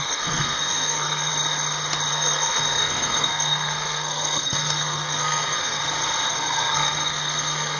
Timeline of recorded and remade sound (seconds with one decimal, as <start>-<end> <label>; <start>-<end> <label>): 0.0-1.3 remade; 1.3-2.1 recorded; 2.1-5.8 remade; 5.8-6.3 recorded; 6.3-7.8 remade